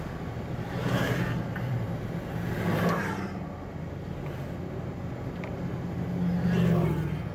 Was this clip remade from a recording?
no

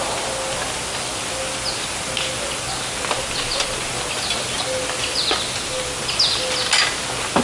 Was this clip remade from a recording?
no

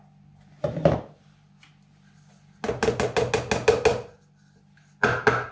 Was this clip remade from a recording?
no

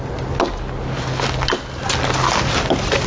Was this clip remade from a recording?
no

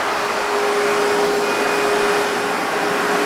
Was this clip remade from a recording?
no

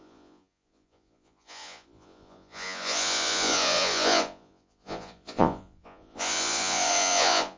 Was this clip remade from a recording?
yes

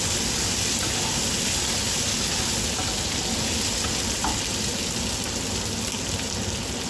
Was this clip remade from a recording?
no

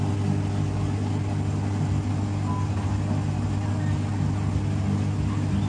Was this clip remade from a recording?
no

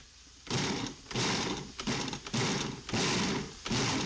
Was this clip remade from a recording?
no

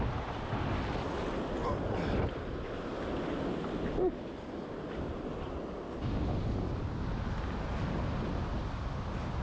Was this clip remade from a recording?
no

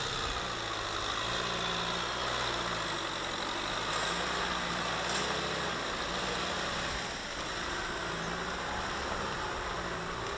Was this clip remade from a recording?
no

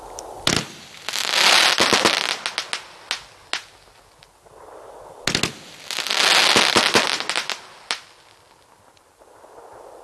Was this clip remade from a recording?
no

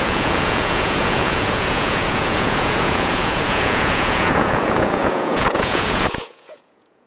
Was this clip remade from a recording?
yes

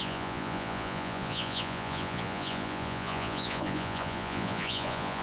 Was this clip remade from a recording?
yes